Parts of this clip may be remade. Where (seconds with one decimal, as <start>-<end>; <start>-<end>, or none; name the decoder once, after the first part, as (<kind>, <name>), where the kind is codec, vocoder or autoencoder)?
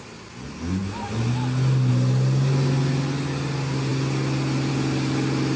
none